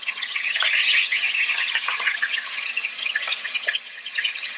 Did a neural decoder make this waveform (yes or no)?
yes